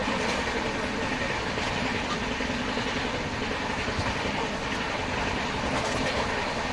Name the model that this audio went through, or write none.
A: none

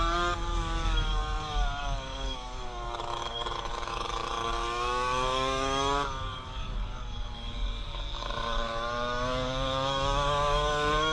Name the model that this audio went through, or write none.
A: codec, DAC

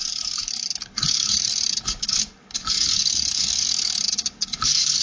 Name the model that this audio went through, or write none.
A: codec, DAC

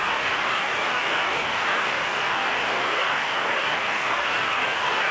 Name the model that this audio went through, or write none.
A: codec, DAC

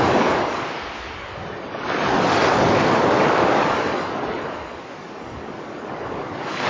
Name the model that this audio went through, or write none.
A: codec, DAC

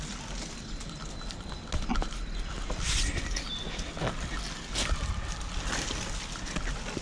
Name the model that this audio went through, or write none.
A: none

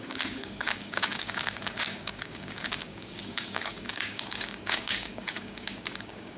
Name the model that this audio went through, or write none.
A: codec, DAC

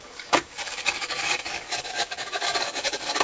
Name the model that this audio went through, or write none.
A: codec, DAC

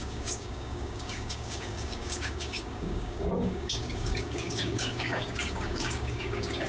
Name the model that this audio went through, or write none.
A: codec, DAC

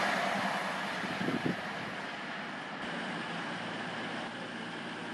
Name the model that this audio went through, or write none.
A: none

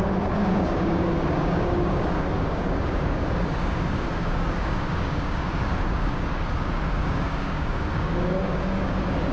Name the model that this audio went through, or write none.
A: codec, DAC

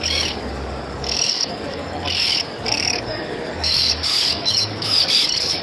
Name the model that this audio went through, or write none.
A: codec, DAC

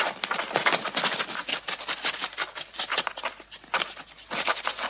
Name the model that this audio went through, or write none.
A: none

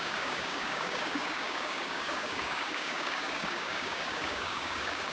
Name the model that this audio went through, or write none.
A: codec, DAC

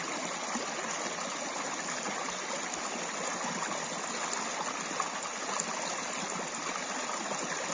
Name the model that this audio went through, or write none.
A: none